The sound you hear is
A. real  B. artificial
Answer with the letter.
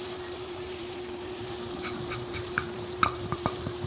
B